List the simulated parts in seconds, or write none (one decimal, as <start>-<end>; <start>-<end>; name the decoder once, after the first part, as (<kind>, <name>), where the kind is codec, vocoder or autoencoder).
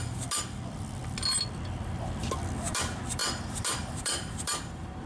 0.0-1.0 (vocoder, BigVGAN v2); 2.2-5.1